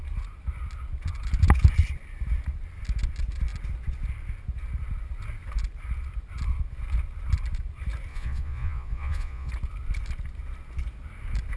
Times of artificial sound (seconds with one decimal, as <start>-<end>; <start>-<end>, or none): 8.1-9.5